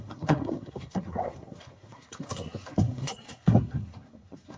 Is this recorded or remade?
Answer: remade